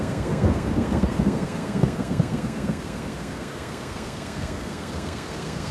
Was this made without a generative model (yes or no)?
no